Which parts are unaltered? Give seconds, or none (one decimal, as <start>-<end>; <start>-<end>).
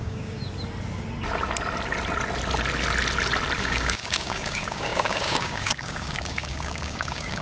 0.4-3.6